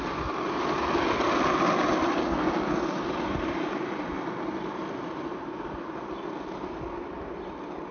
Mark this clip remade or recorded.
recorded